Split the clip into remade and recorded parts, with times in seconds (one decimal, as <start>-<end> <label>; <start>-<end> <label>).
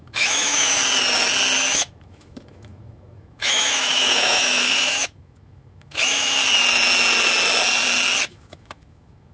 0.0-0.8 remade; 0.8-1.6 recorded; 1.6-6.4 remade; 6.4-8.3 recorded; 8.3-9.3 remade